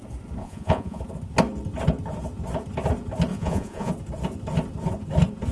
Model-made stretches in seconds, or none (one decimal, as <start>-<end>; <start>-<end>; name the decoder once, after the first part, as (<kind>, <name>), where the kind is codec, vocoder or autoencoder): 0.4-1.0 (vocoder, Vocos); 3.3-3.9